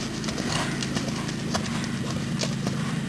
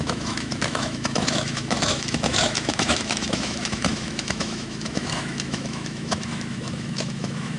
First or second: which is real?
first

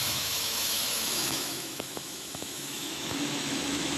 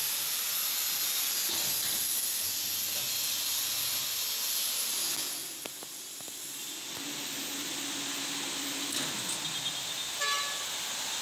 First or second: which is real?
second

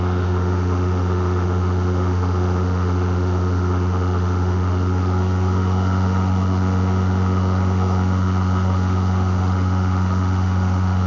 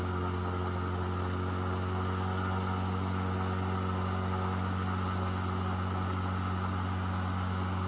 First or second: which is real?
second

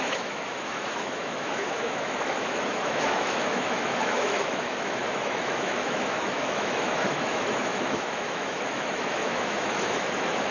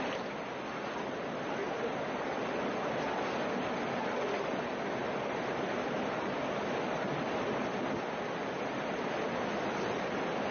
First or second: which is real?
second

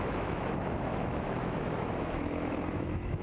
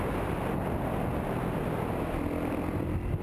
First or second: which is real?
second